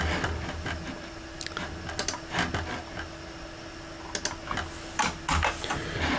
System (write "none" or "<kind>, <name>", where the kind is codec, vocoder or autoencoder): none